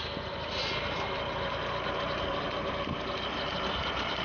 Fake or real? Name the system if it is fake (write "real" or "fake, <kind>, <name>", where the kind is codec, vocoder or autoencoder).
real